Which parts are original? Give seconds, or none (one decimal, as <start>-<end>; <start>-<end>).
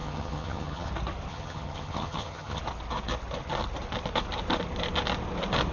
0.9-1.3; 2.6-5.7